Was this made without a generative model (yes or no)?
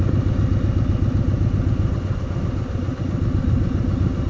yes